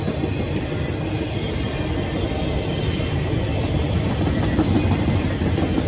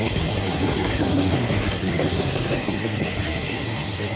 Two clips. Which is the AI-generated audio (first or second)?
second